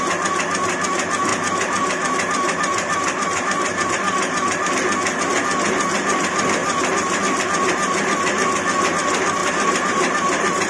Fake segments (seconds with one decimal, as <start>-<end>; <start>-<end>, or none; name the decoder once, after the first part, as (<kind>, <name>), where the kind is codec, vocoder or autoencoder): 1.3-4.7 (vocoder, BigVGAN v2); 6.6-7.2; 9.4-10.7